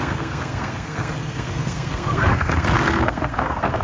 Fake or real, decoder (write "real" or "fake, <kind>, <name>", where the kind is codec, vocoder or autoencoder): fake, codec, SNAC